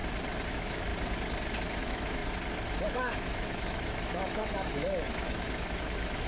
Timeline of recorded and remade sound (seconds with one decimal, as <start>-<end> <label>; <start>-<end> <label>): 0.0-0.5 recorded; 0.5-0.9 remade; 0.9-1.8 recorded; 1.8-2.2 remade; 2.2-2.9 recorded; 2.9-6.3 remade